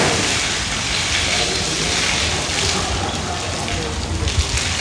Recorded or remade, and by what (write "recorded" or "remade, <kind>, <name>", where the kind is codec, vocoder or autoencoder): recorded